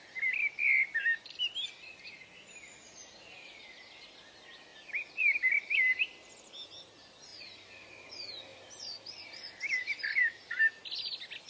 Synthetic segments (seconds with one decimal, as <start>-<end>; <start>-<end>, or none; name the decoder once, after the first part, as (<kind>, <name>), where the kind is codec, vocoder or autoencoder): 4.7-5.5 (vocoder, BigVGAN v2); 7.3-7.9; 8.5-10.6

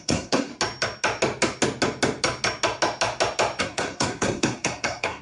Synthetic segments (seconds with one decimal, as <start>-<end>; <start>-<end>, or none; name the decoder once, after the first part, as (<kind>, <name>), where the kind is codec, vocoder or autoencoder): 0.0-0.5 (codec, SNAC); 3.6-5.2

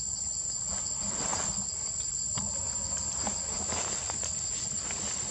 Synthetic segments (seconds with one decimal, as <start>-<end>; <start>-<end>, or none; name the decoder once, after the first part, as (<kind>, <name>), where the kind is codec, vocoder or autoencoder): none

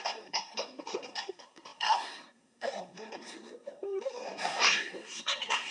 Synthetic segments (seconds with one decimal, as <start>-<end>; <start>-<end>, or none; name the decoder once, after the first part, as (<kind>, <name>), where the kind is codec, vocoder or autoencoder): 0.0-5.7 (codec, SNAC)